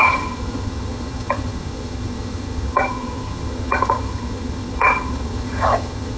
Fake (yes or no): yes